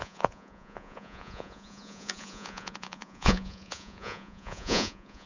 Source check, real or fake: fake